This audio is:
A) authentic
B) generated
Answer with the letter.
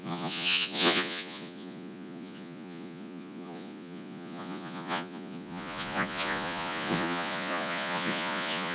B